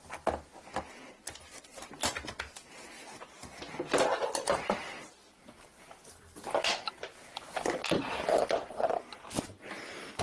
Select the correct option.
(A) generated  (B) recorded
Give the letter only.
B